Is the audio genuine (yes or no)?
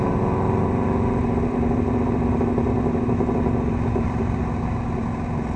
yes